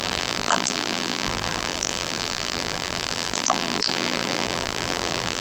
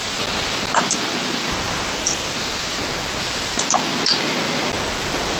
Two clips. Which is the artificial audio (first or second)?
first